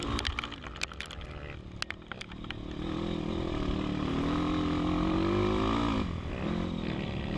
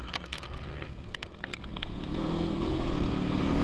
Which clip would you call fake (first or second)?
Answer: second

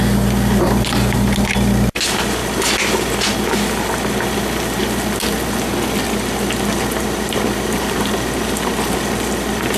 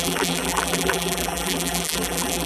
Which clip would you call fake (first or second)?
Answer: second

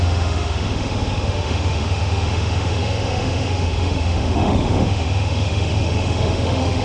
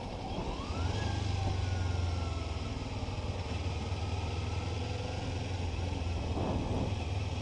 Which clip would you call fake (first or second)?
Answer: first